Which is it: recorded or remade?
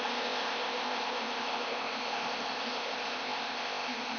remade